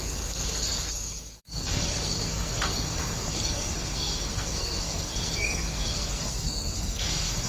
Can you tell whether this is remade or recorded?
remade